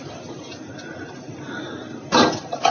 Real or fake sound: real